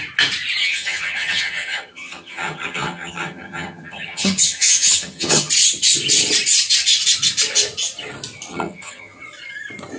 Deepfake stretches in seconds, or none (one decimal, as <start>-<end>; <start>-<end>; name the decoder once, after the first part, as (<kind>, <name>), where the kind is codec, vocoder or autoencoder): 0.6-5.5 (vocoder, HiFi-GAN); 8.5-9.2